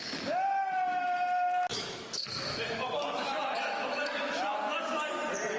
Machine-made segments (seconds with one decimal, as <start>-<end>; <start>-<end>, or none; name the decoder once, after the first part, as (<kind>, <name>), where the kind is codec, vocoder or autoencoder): 1.7-5.0 (autoencoder, DAC-VAE)